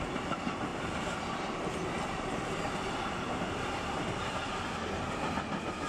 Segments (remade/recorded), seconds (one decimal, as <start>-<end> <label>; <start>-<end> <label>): 0.0-0.7 recorded; 0.7-4.2 remade; 4.2-5.9 recorded